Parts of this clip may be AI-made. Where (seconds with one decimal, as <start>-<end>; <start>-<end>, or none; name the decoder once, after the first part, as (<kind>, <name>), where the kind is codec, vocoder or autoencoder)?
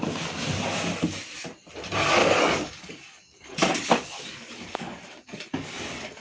2.2-6.2 (codec, DAC)